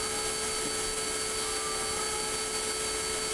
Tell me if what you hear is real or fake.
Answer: real